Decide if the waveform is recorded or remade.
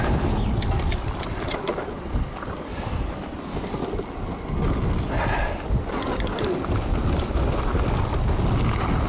recorded